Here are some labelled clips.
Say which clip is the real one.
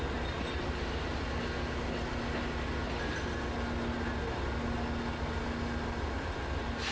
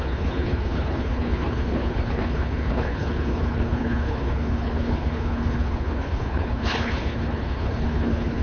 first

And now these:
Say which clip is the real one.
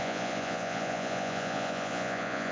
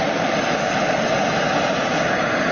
second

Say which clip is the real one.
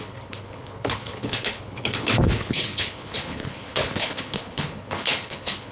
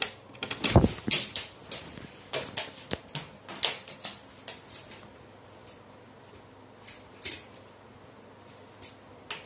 second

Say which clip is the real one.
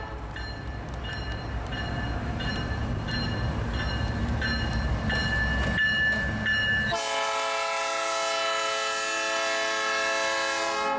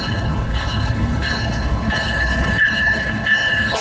first